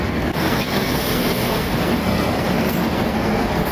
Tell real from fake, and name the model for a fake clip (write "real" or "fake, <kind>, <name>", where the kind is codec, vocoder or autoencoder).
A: fake, codec, SNAC